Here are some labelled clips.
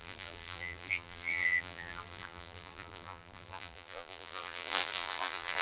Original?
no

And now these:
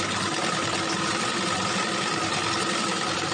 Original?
yes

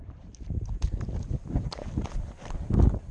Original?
yes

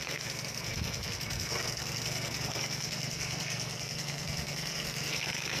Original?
no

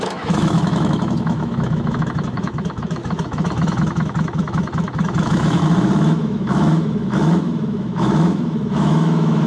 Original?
no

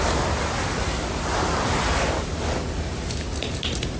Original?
yes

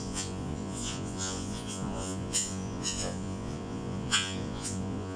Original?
no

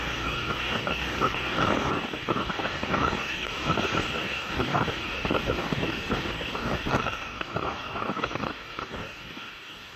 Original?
no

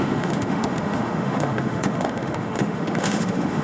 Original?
no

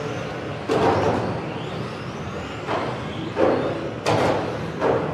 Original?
yes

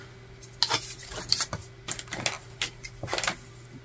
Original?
yes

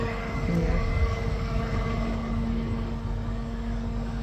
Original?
no